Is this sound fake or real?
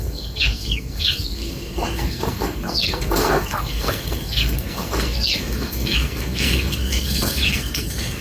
fake